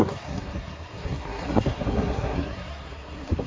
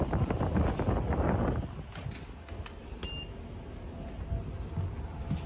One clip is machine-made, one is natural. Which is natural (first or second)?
second